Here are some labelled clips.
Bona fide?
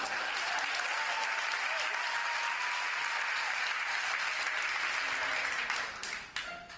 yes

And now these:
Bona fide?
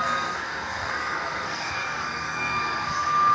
no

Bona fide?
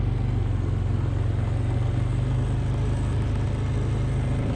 yes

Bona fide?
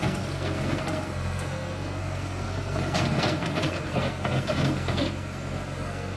no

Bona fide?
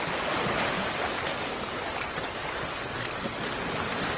yes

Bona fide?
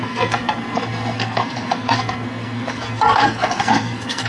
no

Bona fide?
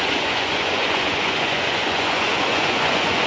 no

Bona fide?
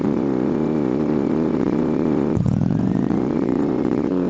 no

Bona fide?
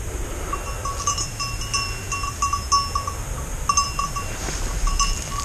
yes